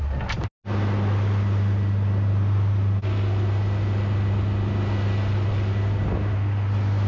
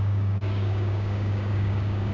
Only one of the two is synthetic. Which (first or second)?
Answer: second